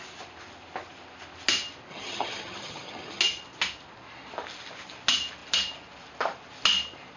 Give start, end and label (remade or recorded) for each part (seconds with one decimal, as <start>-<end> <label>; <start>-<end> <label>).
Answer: 0.0-1.9 recorded; 1.9-3.2 remade; 3.2-7.2 recorded